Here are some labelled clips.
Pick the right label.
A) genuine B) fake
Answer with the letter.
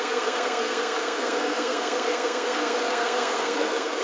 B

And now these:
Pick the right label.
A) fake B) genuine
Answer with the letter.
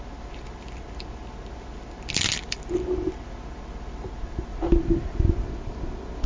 B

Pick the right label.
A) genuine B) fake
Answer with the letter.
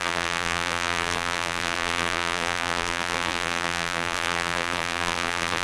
B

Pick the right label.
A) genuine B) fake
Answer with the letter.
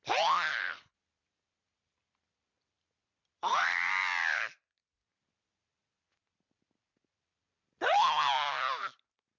A